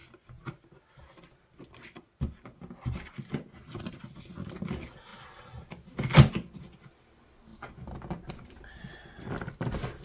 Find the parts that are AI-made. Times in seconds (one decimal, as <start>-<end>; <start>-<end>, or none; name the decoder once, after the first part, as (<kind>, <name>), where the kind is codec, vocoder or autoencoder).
none